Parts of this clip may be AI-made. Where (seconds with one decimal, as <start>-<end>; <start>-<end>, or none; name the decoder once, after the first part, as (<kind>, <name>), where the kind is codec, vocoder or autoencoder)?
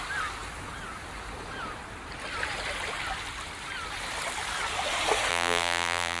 5.3-6.2 (vocoder, BigVGAN v2)